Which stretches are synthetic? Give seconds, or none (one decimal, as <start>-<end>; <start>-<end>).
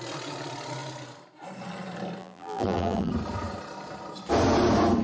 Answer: 2.2-3.1